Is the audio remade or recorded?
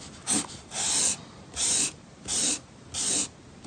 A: recorded